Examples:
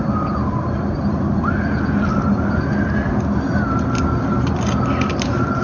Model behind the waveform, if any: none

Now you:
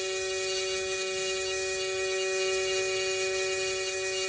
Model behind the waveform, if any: autoencoder, DAC-VAE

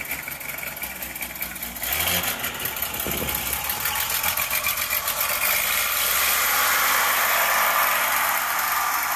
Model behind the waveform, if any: none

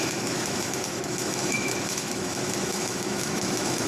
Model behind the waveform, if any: autoencoder, DAC-VAE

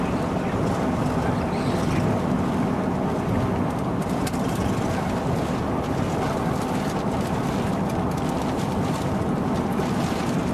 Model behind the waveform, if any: none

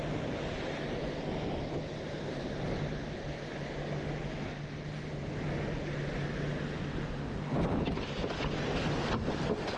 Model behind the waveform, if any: none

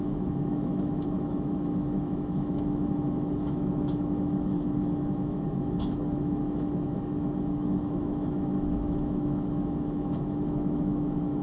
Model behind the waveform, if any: autoencoder, DAC-VAE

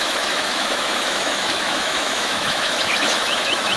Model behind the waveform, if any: autoencoder, DAC-VAE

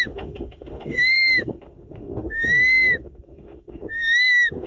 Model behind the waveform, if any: autoencoder, DAC-VAE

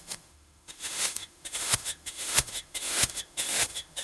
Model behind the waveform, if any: autoencoder, DAC-VAE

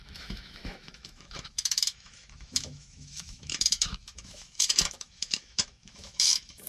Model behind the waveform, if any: autoencoder, DAC-VAE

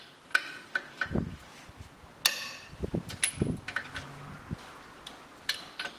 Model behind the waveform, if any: none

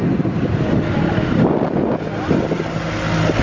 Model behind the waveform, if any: none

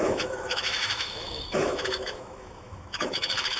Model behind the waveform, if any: autoencoder, DAC-VAE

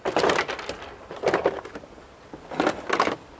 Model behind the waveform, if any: none